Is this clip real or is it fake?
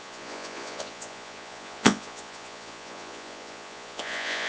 fake